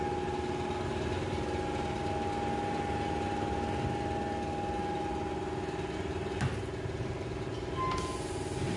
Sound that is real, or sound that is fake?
real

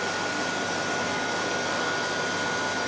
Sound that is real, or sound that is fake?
real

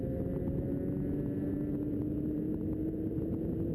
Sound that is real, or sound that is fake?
real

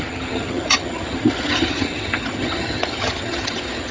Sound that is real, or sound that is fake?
fake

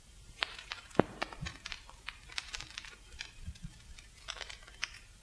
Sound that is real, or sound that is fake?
fake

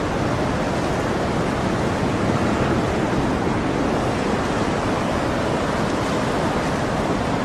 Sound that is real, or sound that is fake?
real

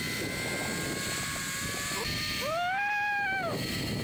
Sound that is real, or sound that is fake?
real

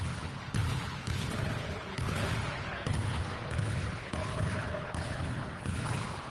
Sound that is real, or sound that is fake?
fake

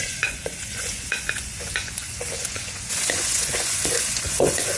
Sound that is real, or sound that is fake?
fake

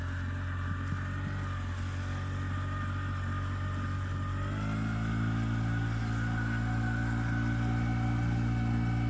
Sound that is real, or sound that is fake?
real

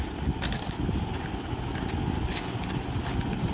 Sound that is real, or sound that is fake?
real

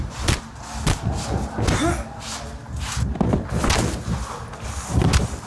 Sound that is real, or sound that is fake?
real